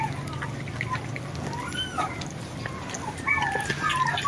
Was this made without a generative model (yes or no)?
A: yes